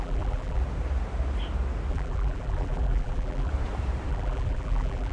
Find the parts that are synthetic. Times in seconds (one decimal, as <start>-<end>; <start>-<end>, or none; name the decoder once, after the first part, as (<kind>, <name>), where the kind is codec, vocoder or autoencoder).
0.0-0.6 (vocoder, BigVGAN v2); 1.9-3.5; 4.1-5.1